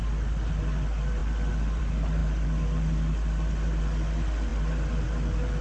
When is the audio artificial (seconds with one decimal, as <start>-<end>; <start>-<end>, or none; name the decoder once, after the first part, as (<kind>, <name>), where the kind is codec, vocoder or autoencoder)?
none